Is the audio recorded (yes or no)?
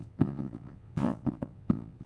no